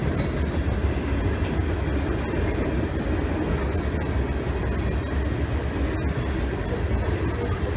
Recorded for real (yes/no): yes